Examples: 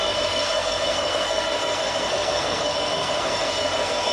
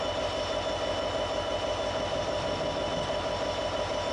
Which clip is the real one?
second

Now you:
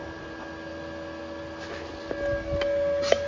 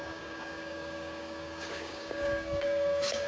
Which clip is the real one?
first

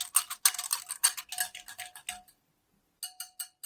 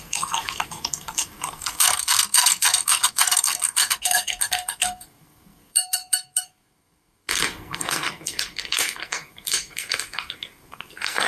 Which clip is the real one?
first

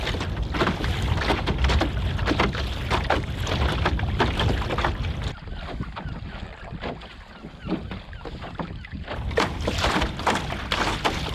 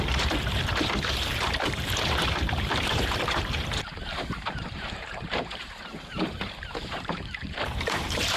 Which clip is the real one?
first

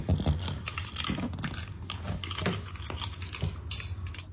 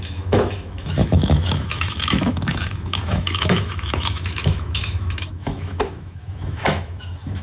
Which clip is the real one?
first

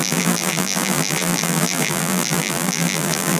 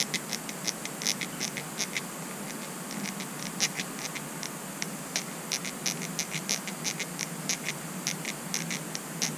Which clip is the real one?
second